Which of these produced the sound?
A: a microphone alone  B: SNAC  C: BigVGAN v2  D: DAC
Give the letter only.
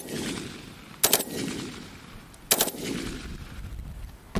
A